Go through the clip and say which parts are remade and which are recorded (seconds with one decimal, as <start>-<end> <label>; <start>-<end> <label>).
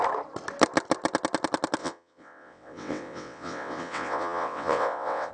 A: 0.0-1.8 recorded; 1.8-5.3 remade